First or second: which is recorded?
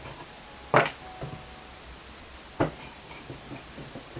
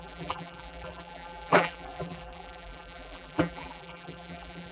first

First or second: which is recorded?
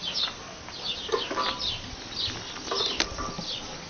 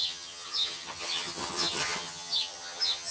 first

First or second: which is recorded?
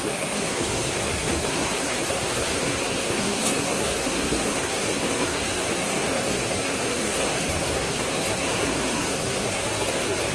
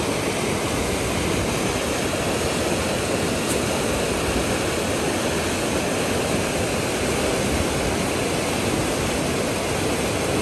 second